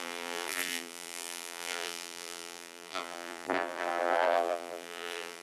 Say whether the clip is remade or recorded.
remade